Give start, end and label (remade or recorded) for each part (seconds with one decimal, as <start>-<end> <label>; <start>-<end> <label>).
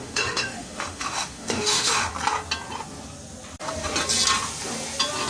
0.0-2.1 remade; 2.1-5.3 recorded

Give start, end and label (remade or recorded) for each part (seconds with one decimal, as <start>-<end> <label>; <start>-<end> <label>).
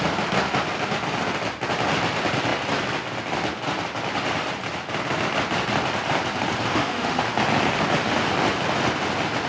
0.0-6.7 recorded; 6.7-7.2 remade; 7.2-9.5 recorded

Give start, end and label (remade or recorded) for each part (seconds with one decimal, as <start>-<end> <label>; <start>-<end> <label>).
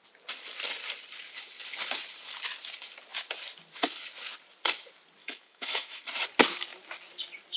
0.0-5.2 recorded; 5.2-6.0 remade; 6.0-7.6 recorded